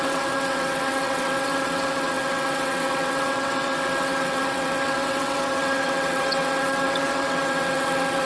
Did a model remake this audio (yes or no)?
yes